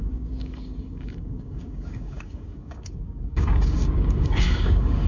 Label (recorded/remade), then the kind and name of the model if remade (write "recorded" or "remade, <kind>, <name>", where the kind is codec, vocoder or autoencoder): remade, codec, DAC